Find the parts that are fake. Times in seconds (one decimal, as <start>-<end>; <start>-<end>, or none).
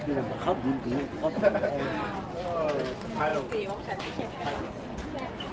none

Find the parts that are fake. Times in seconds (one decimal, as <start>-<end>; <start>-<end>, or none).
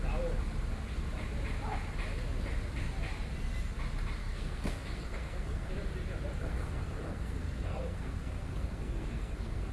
4.2-5.7; 6.4-9.7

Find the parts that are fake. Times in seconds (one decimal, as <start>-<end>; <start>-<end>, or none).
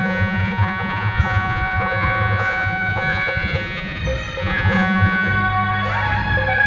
0.0-4.0; 4.4-5.3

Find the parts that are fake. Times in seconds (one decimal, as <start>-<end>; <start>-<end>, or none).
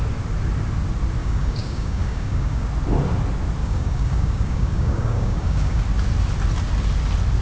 1.2-2.7; 3.6-5.8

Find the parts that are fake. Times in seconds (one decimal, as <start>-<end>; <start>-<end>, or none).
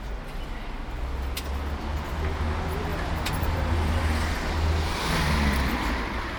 2.9-4.0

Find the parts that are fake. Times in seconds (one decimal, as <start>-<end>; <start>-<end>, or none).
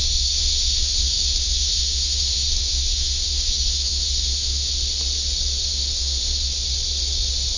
0.0-4.6; 5.7-6.6